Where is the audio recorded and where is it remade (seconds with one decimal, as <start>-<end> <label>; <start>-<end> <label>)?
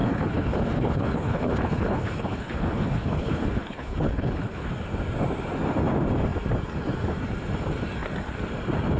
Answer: 0.0-4.7 remade; 4.7-9.0 recorded